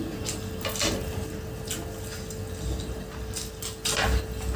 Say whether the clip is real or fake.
real